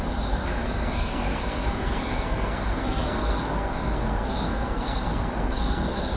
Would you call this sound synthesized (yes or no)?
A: yes